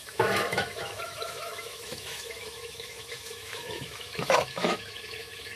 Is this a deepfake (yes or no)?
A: yes